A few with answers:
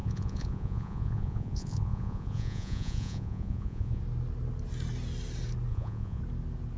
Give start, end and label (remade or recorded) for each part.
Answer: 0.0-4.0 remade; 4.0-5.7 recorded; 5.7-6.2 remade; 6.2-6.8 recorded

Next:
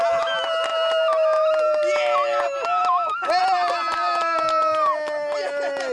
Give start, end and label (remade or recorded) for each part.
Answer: 0.0-5.9 recorded

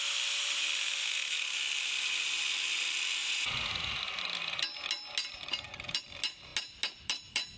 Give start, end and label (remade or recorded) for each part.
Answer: 0.0-3.2 recorded; 3.2-4.0 remade; 4.0-7.6 recorded

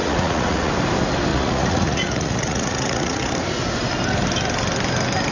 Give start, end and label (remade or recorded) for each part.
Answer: 0.0-0.7 remade; 0.7-1.3 recorded; 1.3-3.3 remade; 3.3-5.3 recorded

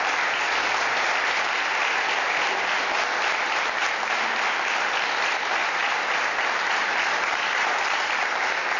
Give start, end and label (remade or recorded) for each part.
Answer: 0.0-8.8 recorded

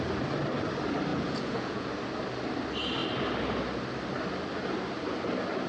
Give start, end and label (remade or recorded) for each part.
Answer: 0.0-1.1 recorded; 1.1-1.9 remade; 1.9-5.7 recorded

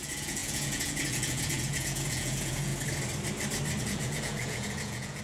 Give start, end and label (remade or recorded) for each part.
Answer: 0.0-2.7 remade; 2.7-3.8 recorded; 3.8-5.2 remade

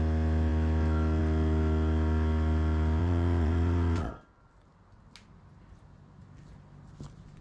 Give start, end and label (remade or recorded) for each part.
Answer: 0.0-3.0 recorded; 3.0-4.1 remade; 4.1-7.4 recorded